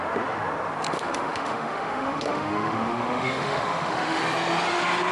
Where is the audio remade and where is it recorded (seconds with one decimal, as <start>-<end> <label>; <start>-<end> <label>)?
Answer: 0.0-0.9 recorded; 0.9-4.2 remade; 4.2-5.1 recorded